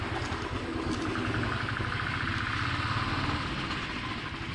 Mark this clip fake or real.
real